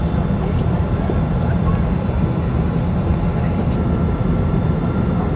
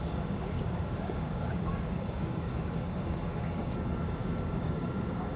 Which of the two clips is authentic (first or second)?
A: first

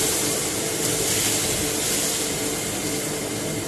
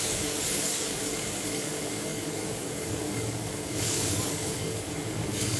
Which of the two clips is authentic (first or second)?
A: first